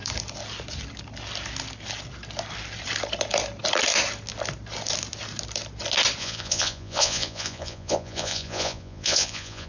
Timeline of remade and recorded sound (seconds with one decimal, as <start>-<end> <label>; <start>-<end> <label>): 0.0-6.2 recorded; 6.2-9.7 remade